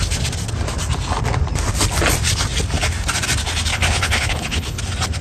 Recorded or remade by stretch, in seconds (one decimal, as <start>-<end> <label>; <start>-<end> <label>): 0.0-3.7 recorded; 3.7-4.8 remade; 4.8-5.2 recorded